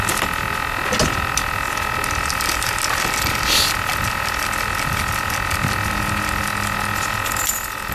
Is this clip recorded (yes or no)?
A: yes